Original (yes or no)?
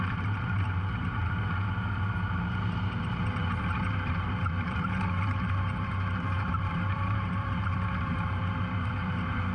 no